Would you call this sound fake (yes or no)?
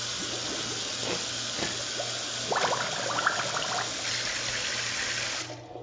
no